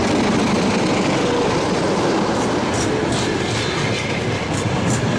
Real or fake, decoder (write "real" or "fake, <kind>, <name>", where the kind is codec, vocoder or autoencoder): real